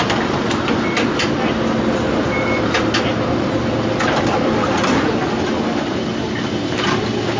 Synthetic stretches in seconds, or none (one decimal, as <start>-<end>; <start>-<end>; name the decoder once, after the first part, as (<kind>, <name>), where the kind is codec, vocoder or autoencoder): none

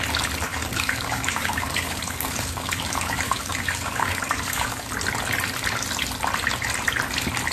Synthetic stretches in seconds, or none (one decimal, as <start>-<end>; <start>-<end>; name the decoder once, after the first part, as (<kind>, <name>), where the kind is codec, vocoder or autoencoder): 0.5-4.9 (codec, DAC)

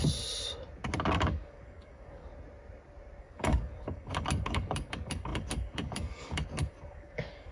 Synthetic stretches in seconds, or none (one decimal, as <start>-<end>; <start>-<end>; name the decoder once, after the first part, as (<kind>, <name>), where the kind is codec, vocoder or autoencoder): 1.1-2.3 (codec, DAC); 3.2-7.5

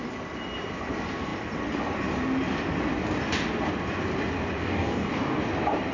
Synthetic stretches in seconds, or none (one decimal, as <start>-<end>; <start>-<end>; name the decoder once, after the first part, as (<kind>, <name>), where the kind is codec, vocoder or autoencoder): 4.6-5.4 (codec, DAC)